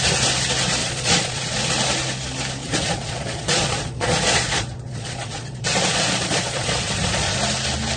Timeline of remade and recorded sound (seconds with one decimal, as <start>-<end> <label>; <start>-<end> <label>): 0.0-0.8 recorded; 0.8-1.6 remade; 1.6-2.6 recorded; 2.6-7.4 remade; 7.4-8.0 recorded